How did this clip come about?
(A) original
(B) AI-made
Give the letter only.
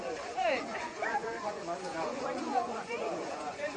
B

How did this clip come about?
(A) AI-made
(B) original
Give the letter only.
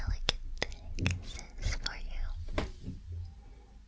B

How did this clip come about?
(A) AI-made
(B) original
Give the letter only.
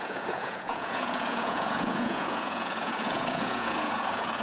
A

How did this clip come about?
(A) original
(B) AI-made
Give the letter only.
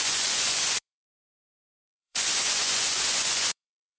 B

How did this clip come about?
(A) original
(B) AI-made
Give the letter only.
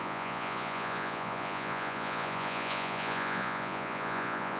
B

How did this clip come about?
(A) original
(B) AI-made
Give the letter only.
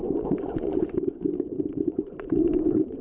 B